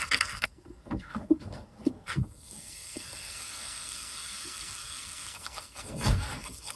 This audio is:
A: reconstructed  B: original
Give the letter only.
A